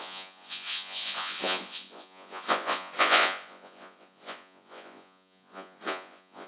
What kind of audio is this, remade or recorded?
remade